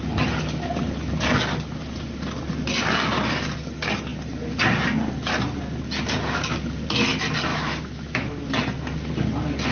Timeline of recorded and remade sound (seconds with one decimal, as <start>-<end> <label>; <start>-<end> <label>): 0.0-7.5 recorded; 7.5-8.5 remade; 8.5-9.7 recorded